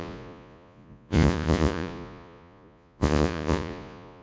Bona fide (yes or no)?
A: no